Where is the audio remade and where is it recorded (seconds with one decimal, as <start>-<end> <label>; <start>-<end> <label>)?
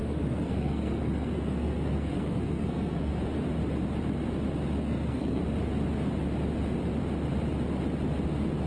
0.0-3.1 remade; 3.1-4.8 recorded; 4.8-5.4 remade; 5.4-8.7 recorded